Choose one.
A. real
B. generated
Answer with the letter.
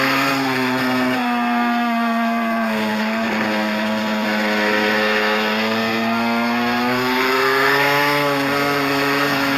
B